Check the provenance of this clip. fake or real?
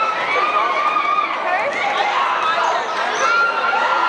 real